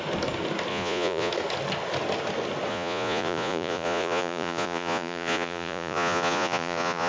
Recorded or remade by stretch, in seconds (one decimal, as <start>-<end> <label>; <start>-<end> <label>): 0.0-0.7 recorded; 0.7-1.3 remade; 1.3-2.7 recorded; 2.7-7.1 remade